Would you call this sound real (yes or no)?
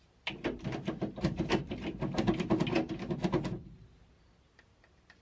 yes